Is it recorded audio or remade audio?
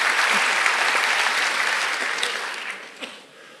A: recorded